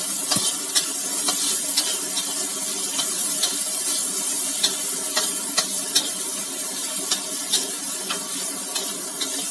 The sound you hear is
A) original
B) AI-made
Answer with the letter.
A